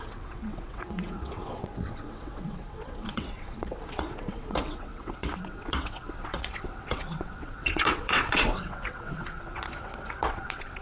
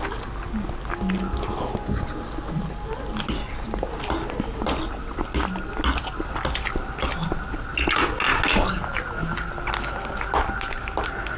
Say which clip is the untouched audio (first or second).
second